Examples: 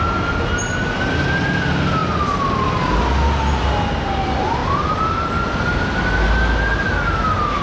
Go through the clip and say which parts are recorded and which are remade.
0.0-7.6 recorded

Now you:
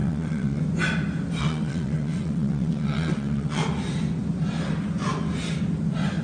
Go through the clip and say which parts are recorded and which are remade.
0.0-0.6 remade; 0.6-1.4 recorded; 1.4-3.6 remade; 3.6-6.2 recorded

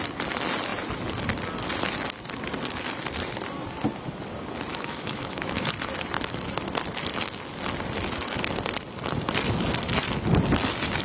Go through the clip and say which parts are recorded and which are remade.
0.0-4.7 recorded; 4.7-5.7 remade; 5.7-11.0 recorded

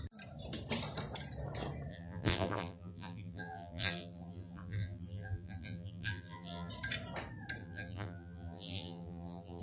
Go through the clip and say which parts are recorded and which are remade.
0.0-1.9 recorded; 1.9-6.7 remade; 6.7-7.6 recorded; 7.6-9.6 remade

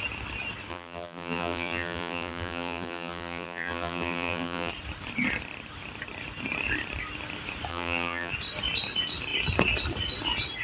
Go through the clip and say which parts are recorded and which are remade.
0.0-0.7 recorded; 0.7-4.7 remade; 4.7-7.7 recorded; 7.7-8.3 remade; 8.3-10.6 recorded